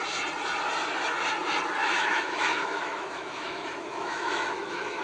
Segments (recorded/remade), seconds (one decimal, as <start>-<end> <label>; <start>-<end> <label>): 0.0-1.8 recorded; 1.8-5.0 remade